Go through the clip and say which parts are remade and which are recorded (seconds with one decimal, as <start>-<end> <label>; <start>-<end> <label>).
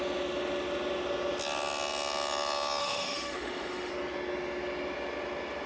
0.0-2.8 recorded; 2.8-3.9 remade; 3.9-5.7 recorded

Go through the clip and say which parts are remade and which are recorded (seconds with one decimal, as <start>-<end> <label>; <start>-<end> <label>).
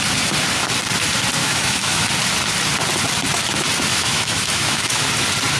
0.0-1.4 recorded; 1.4-2.1 remade; 2.1-3.9 recorded; 3.9-5.0 remade; 5.0-5.6 recorded